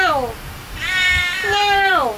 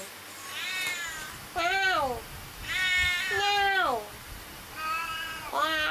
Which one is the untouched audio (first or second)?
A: second